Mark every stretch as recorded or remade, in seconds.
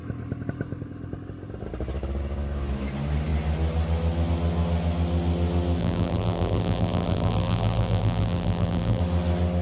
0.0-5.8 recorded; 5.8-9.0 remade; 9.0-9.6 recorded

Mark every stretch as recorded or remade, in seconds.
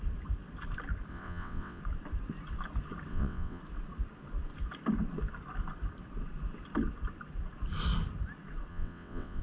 0.0-1.1 recorded; 1.1-1.8 remade; 1.8-3.1 recorded; 3.1-3.6 remade; 3.6-8.7 recorded; 8.7-9.4 remade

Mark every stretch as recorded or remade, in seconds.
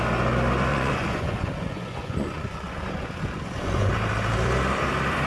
0.0-0.7 recorded; 0.7-3.9 remade; 3.9-5.3 recorded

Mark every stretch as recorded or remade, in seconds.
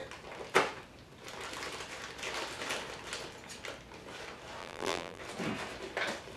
0.0-4.6 recorded; 4.6-5.2 remade; 5.2-6.4 recorded